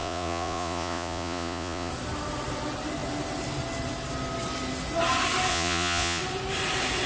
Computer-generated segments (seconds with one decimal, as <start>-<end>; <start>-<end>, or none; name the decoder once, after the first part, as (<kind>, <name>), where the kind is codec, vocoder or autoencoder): 0.0-1.9 (vocoder, Vocos); 5.5-6.2